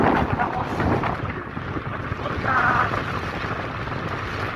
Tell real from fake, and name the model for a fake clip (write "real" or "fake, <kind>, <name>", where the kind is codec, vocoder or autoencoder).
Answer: real